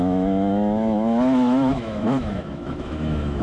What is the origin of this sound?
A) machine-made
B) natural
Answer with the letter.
A